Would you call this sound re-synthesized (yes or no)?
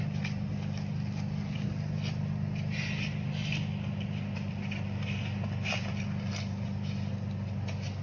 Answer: no